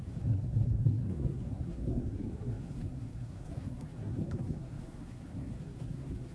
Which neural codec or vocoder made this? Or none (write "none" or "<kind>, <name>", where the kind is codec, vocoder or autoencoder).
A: codec, SNAC